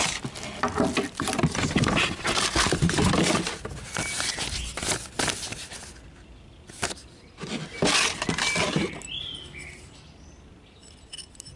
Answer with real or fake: real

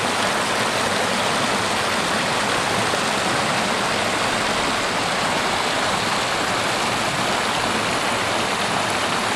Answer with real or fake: real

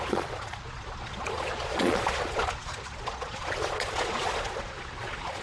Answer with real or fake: fake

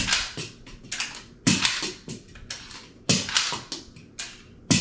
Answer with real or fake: real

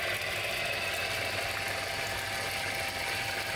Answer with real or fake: real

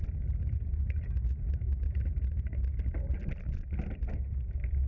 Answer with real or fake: real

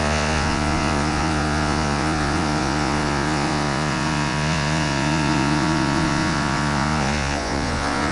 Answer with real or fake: fake